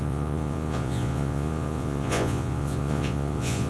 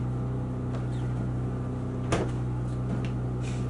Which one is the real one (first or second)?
second